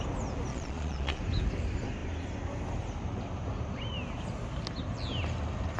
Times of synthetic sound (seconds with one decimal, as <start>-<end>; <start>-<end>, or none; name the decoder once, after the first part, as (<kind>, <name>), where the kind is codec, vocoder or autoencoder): 0.5-1.2 (vocoder, Vocos)